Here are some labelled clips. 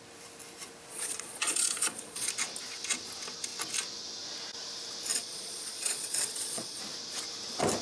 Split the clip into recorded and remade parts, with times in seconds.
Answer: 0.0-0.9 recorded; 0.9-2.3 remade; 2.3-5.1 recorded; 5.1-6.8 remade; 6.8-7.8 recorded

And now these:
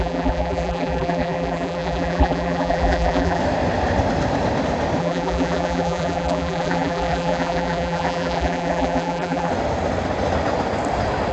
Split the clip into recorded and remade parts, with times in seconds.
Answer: 0.0-3.4 remade; 3.4-5.0 recorded; 5.0-9.5 remade; 9.5-11.3 recorded